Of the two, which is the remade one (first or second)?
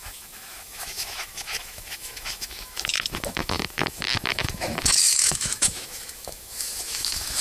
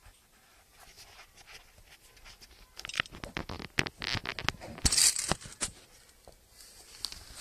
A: first